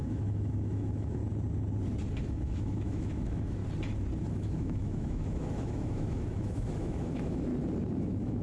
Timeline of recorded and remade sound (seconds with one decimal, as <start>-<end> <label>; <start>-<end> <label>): 0.0-1.2 remade; 1.2-2.2 recorded; 2.2-3.6 remade; 3.6-4.3 recorded; 4.3-7.5 remade; 7.5-8.0 recorded; 8.0-8.4 remade